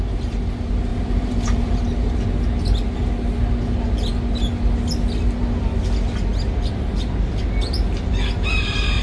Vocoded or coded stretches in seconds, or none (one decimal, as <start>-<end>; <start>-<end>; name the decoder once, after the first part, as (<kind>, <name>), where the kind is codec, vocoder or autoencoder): 0.9-1.8 (vocoder, BigVGAN v2)